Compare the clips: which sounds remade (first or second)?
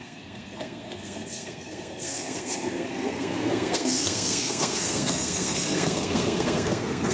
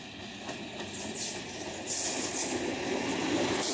first